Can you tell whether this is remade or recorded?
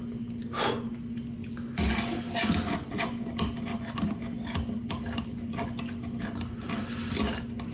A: recorded